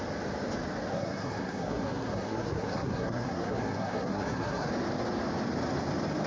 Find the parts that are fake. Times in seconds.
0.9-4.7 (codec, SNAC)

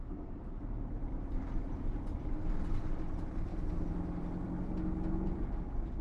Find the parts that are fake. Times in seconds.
0.0-6.0 (vocoder, BigVGAN v2)

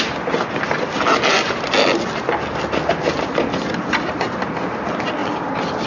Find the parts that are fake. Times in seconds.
5.2-5.9 (vocoder, BigVGAN v2)

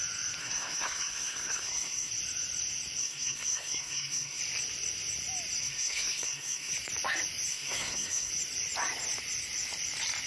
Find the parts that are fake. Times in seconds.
0.4-2.1 (codec, SNAC); 3.0-4.4; 5.6-6.7; 7.5-8.3

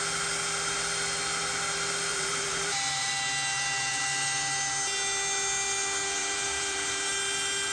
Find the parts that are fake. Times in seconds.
2.1-3.1 (vocoder, BigVGAN v2); 3.5-4.0; 6.2-7.1

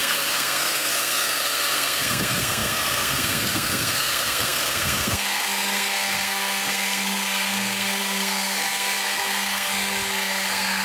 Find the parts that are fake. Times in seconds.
0.0-10.8 (codec, SNAC)

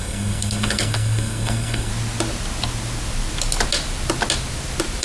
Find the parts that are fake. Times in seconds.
0.0-1.9 (codec, SNAC)

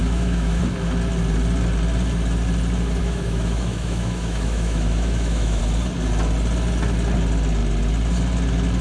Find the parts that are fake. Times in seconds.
0.0-0.6 (autoencoder, DAC-VAE); 3.0-5.6